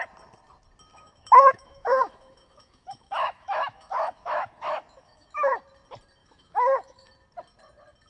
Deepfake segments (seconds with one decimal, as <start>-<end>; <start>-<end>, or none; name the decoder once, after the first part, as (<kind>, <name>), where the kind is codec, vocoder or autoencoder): 0.9-5.5 (autoencoder, DAC-VAE); 6.2-7.1